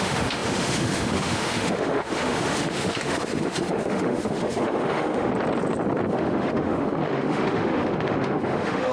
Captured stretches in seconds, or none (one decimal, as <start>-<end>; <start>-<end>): 5.3-6.1